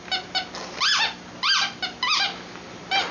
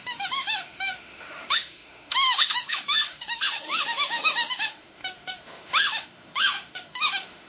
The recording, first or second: first